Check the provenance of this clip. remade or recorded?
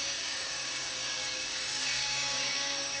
remade